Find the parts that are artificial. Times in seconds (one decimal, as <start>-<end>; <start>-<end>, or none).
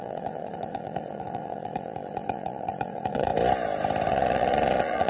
0.0-3.3; 4.1-5.1